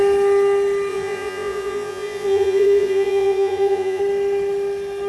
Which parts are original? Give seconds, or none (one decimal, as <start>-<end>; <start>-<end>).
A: 0.0-0.9; 4.0-5.1